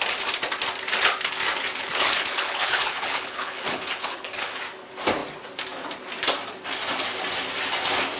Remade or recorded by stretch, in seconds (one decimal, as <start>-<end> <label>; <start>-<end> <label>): 0.0-1.8 recorded; 1.8-4.6 remade; 4.6-8.2 recorded